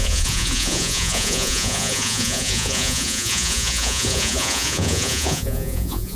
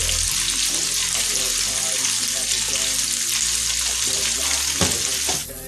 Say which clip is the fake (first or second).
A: first